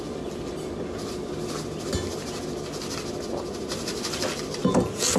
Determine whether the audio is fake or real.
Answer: real